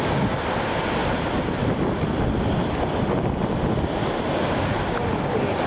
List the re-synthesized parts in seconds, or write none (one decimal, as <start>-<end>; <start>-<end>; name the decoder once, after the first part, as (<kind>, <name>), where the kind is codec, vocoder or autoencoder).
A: none